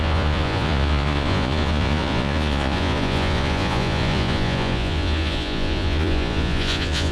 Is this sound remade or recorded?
remade